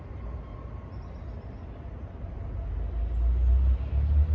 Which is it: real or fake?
real